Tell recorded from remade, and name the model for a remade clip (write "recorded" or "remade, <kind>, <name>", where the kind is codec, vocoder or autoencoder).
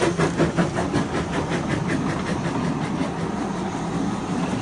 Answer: recorded